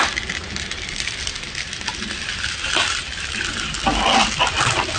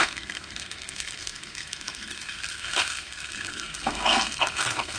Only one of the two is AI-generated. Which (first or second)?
second